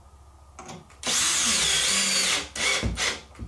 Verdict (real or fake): real